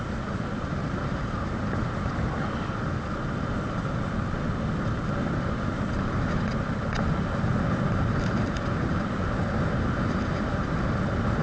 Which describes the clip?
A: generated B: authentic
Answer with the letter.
B